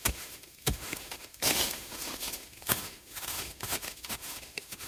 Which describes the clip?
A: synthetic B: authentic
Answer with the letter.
A